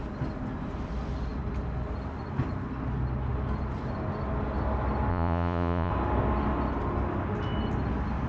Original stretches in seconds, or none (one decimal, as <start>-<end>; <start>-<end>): 0.0-5.1; 5.9-8.3